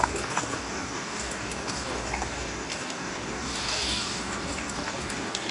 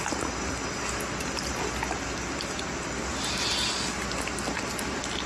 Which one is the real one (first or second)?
second